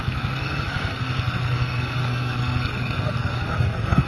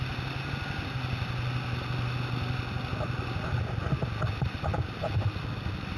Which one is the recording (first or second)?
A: second